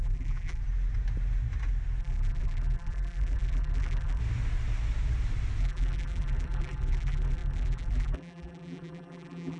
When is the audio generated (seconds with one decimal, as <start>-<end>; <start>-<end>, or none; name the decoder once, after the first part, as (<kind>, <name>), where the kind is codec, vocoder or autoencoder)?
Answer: 0.0-0.6 (vocoder, BigVGAN v2); 2.0-4.2; 5.6-9.6